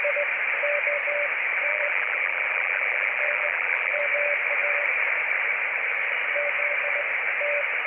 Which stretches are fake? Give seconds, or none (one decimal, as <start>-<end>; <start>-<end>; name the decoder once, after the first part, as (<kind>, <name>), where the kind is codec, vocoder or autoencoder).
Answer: 1.7-4.0 (vocoder, BigVGAN v2)

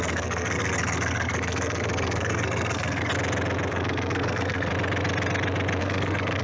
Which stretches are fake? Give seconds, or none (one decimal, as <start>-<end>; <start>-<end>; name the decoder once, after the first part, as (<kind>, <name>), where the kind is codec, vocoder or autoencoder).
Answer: 0.0-3.1 (codec, SNAC); 3.7-4.7; 5.8-6.4

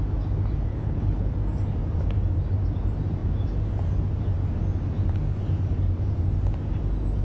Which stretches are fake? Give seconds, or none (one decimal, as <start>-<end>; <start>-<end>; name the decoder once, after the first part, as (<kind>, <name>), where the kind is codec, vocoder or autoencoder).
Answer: 0.7-1.3 (codec, HILCodec)

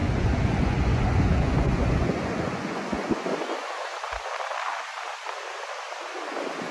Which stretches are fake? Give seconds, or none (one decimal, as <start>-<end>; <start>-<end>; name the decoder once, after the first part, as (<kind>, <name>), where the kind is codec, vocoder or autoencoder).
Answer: 0.0-4.0 (vocoder, Vocos)

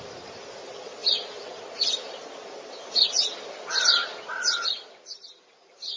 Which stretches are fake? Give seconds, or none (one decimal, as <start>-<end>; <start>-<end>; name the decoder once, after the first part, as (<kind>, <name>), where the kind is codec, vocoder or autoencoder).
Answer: none